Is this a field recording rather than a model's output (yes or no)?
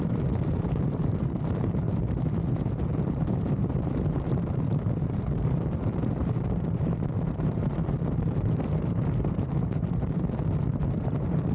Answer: no